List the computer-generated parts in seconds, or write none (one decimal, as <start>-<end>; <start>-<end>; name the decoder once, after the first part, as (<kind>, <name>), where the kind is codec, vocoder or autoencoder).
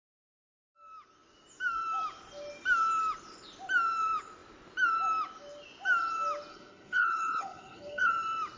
6.5-8.1 (codec, HILCodec)